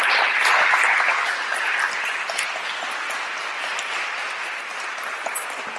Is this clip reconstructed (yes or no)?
no